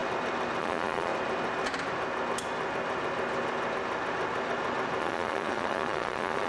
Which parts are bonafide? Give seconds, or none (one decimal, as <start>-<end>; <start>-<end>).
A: 0.0-0.6; 1.1-5.0